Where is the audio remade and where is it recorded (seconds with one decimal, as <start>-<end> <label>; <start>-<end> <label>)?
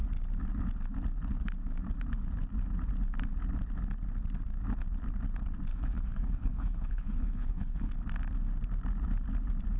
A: 0.0-5.7 recorded; 5.7-7.9 remade; 7.9-9.8 recorded